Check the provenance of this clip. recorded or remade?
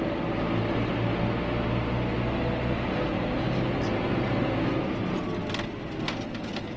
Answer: recorded